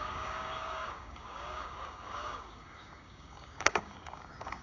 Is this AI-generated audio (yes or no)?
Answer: yes